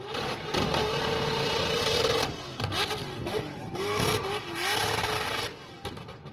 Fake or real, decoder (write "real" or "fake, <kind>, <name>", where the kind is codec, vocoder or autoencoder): real